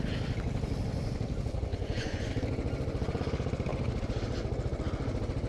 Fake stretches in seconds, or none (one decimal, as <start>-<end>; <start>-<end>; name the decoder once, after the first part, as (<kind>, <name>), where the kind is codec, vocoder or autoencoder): 1.7-2.3 (vocoder, Vocos)